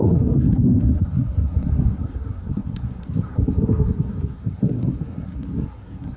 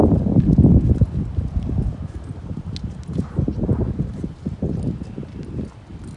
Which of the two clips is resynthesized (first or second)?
first